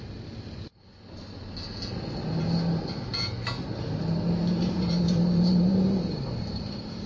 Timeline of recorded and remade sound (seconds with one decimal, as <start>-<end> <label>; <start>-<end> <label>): 0.0-0.9 remade; 0.9-4.6 recorded; 4.6-7.1 remade